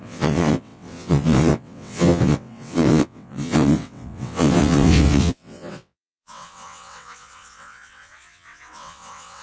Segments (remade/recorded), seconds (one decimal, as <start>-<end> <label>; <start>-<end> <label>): 0.0-9.4 remade